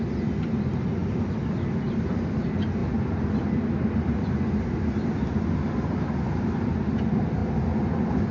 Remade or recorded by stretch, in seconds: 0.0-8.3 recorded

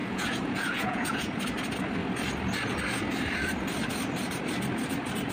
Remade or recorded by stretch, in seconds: 0.0-1.4 remade; 1.4-5.3 recorded